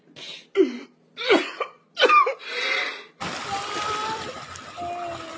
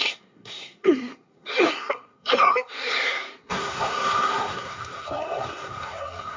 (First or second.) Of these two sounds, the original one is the first